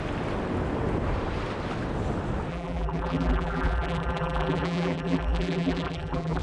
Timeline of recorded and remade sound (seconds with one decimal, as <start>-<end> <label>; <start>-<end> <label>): 0.0-2.5 recorded; 2.5-6.4 remade